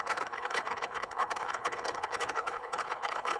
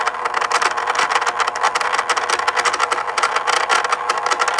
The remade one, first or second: first